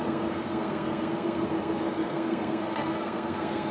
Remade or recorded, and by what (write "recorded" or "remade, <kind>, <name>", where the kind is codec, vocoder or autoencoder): remade, codec, SNAC